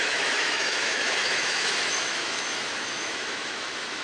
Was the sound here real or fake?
fake